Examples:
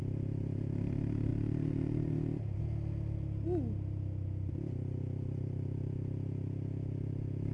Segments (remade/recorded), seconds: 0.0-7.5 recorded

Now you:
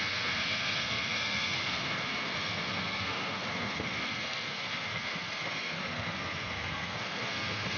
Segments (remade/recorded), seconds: 0.0-7.8 remade